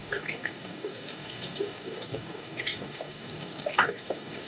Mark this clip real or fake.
fake